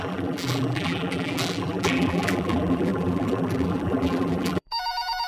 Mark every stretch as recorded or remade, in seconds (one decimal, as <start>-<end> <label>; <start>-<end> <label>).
0.0-5.3 remade